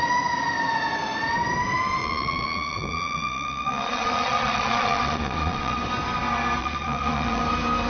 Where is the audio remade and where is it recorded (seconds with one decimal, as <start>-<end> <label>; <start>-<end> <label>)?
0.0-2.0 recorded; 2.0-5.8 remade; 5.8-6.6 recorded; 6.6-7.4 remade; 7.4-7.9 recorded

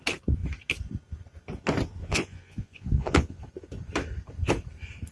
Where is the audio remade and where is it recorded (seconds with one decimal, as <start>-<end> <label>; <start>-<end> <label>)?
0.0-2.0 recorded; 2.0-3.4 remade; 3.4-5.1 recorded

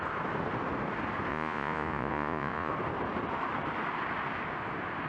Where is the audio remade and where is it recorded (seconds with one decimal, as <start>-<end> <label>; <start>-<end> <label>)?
0.0-1.3 recorded; 1.3-2.7 remade; 2.7-5.1 recorded

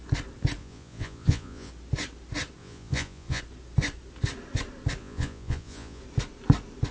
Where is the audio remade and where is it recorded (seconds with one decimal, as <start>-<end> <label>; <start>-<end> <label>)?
0.0-0.6 recorded; 0.6-1.7 remade; 1.7-2.6 recorded; 2.6-3.4 remade; 3.4-5.0 recorded; 5.0-6.0 remade; 6.0-6.9 recorded

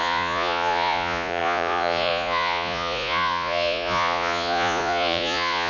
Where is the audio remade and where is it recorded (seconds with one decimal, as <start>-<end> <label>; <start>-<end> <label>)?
0.0-5.7 remade